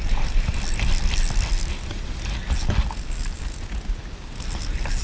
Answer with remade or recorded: recorded